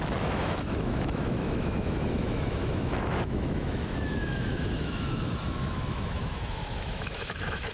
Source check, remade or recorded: remade